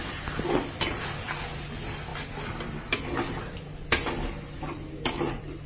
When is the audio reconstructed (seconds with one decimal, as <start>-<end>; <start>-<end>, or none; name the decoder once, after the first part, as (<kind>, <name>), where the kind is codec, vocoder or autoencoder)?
none